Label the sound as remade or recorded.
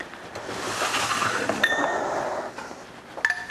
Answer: recorded